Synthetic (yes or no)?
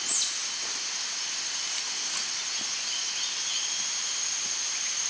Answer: no